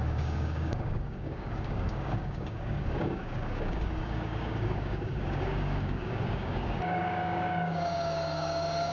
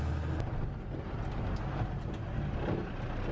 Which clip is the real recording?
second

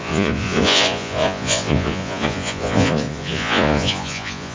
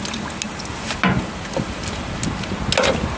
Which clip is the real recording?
second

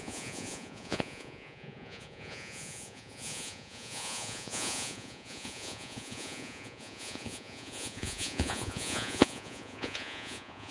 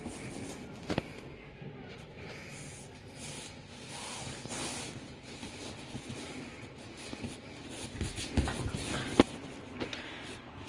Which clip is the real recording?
second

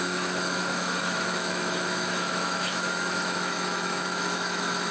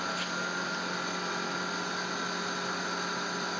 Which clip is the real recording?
second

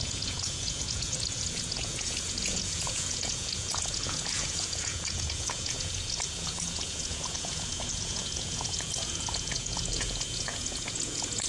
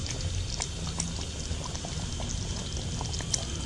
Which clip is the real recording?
second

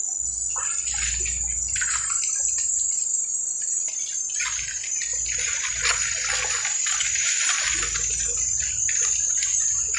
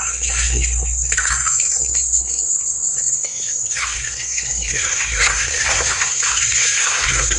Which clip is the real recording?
first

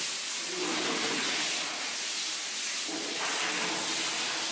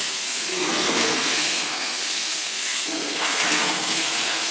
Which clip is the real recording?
first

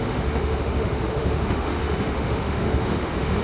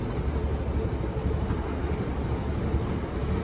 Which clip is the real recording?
second